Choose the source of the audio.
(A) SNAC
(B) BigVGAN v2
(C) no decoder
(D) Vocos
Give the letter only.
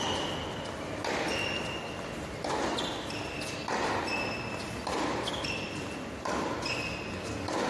C